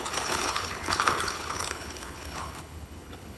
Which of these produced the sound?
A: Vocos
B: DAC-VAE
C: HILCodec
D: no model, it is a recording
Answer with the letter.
C